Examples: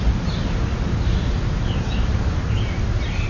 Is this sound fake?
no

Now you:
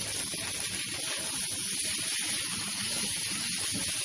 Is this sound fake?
no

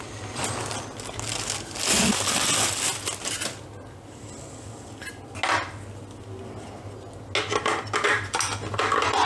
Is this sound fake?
no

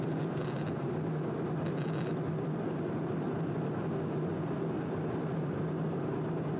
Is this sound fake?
no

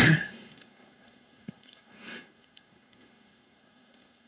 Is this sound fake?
yes